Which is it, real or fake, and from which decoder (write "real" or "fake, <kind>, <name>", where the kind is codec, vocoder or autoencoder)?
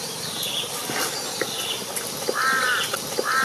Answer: real